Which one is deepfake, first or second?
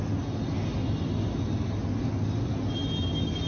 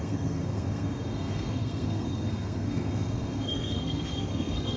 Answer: second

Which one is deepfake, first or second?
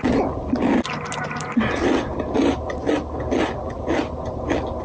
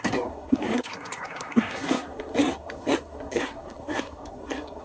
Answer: second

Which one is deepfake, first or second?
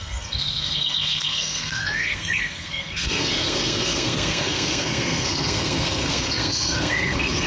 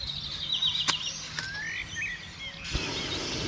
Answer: first